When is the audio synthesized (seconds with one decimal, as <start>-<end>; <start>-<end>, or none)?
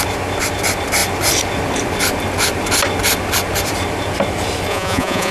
4.7-5.3